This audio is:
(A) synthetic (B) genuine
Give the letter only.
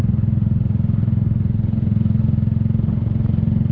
B